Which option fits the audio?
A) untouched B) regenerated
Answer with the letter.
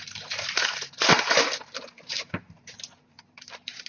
B